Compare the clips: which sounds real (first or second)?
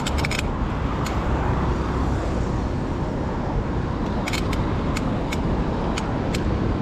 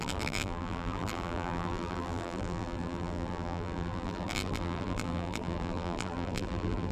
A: first